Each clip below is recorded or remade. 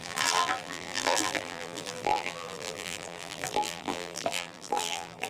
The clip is remade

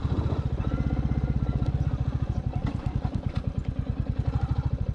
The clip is recorded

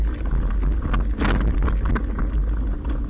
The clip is recorded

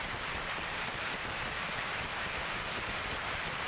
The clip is remade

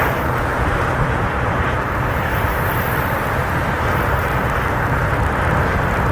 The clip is recorded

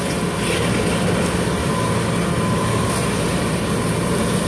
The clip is recorded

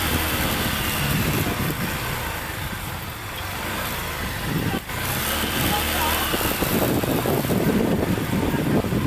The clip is remade